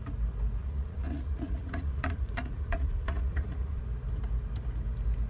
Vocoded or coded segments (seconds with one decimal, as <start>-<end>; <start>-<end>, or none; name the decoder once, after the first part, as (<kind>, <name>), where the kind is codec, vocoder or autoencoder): 0.6-3.8 (vocoder, Vocos)